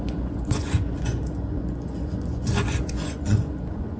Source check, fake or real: fake